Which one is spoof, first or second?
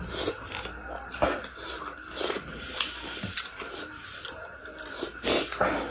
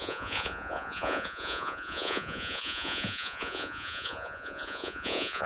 second